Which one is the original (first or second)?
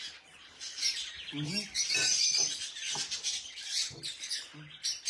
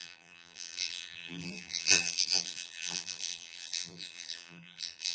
first